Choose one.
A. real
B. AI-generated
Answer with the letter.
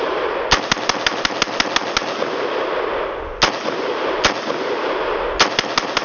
A